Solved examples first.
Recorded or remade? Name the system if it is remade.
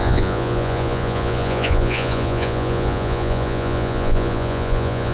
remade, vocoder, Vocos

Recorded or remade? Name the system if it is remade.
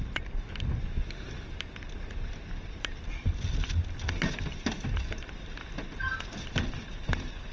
recorded